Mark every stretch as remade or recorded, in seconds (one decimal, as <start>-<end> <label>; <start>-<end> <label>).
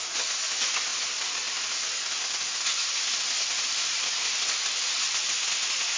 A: 0.0-6.0 recorded